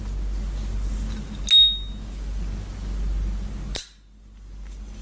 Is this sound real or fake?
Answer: real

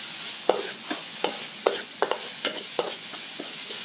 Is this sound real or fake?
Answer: fake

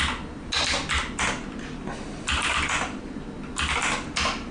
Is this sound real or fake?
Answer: real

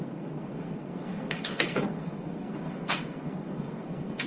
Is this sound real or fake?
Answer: fake